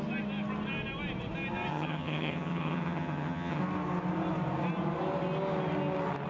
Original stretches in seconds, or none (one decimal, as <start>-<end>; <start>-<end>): 0.0-1.7; 3.6-6.3

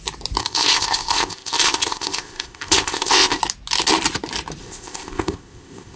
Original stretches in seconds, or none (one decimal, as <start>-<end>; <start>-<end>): 0.0-0.4; 3.4-4.6

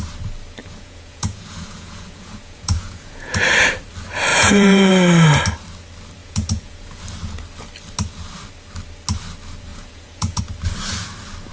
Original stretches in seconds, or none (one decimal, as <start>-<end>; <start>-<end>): 0.0-0.6; 3.4-4.3; 4.9-6.2; 7.0-9.7; 10.4-11.5

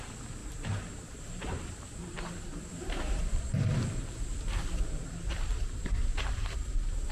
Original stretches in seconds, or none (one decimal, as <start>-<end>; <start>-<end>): 0.0-0.4; 2.3-2.7; 3.4-7.1

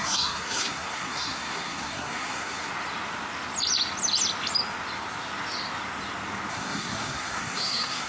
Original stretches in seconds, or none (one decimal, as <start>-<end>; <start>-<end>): 2.7-6.5